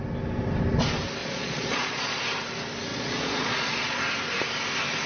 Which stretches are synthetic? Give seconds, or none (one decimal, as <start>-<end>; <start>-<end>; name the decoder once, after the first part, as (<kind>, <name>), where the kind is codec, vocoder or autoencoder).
1.2-2.2 (vocoder, Vocos); 2.9-4.0